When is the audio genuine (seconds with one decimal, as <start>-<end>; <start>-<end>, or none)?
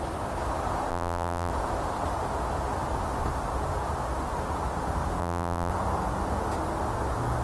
0.0-0.9; 1.5-5.2; 5.7-7.4